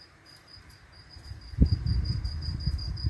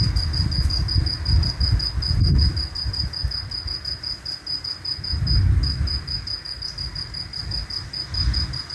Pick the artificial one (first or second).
first